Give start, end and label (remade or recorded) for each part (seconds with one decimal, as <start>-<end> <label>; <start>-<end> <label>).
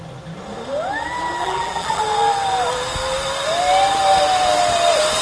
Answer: 0.0-1.4 recorded; 1.4-2.0 remade; 2.0-5.2 recorded